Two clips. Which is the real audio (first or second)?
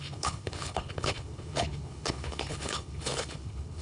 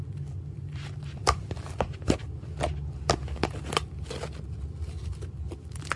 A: second